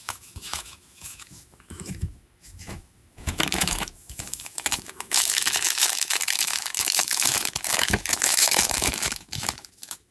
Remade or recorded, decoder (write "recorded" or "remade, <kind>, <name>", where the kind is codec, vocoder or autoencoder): remade, autoencoder, DAC-VAE